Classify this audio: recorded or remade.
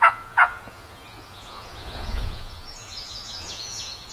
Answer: remade